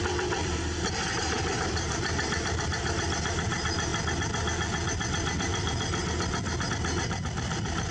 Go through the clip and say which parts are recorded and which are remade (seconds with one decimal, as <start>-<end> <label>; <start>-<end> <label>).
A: 0.0-3.9 remade; 3.9-6.7 recorded; 6.7-7.9 remade